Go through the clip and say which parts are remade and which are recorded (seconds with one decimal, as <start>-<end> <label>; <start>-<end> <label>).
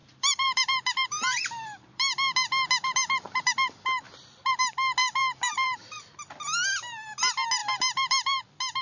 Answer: 0.0-4.6 remade; 4.6-5.0 recorded; 5.0-6.3 remade; 6.3-7.6 recorded; 7.6-8.4 remade; 8.4-8.8 recorded